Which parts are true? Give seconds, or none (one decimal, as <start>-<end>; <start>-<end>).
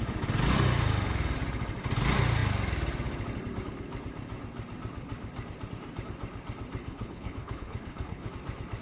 0.0-6.8; 8.3-8.8